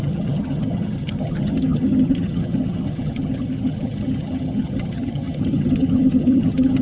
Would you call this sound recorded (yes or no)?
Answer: no